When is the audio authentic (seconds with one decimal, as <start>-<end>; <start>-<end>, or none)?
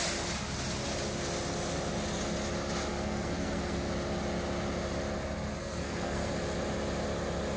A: 0.0-2.9; 3.9-5.6; 6.3-7.6